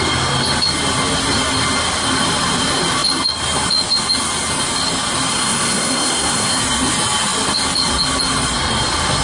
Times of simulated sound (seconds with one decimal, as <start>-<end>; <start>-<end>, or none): 5.3-6.6